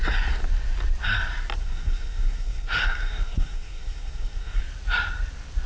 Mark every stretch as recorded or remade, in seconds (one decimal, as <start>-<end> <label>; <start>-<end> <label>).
0.0-1.6 recorded; 1.6-4.6 remade; 4.6-5.7 recorded